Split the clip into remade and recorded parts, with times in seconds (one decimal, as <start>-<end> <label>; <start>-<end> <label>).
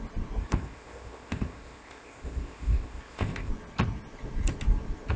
0.0-0.4 recorded; 0.4-3.5 remade; 3.5-5.2 recorded